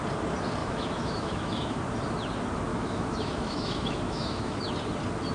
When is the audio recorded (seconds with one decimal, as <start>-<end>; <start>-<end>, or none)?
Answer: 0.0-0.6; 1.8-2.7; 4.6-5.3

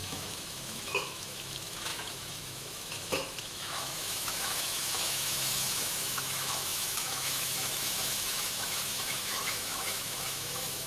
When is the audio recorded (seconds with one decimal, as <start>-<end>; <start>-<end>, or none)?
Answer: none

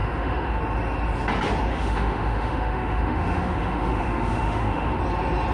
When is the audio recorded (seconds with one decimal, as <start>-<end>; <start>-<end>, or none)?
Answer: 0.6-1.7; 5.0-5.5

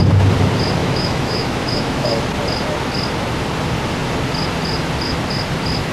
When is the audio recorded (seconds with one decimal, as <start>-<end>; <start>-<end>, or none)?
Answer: 0.0-0.8; 2.1-5.9

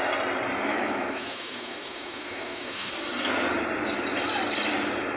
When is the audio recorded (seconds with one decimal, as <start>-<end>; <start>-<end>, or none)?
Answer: 0.0-0.7; 2.9-5.2